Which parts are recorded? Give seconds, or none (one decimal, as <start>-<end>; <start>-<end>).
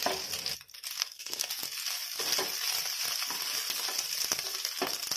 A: 0.0-1.0; 1.5-5.2